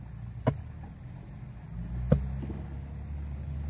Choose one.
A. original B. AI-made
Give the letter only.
A